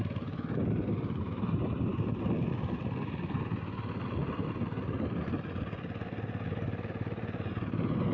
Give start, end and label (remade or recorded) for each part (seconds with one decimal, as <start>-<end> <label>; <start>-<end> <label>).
0.0-1.9 remade; 1.9-6.6 recorded; 6.6-8.1 remade